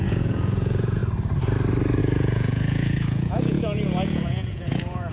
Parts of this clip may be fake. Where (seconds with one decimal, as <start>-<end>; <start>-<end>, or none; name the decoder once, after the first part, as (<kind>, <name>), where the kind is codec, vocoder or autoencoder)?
0.0-1.0 (vocoder, Vocos); 2.0-5.1